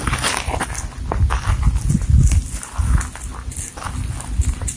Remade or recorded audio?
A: recorded